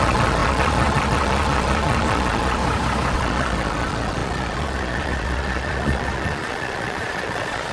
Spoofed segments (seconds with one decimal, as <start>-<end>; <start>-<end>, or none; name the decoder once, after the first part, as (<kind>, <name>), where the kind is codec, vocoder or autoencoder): 0.0-2.6 (vocoder, Vocos); 3.1-7.7